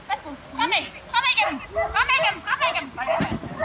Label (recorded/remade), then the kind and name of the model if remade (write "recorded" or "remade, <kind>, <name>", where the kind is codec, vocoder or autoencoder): recorded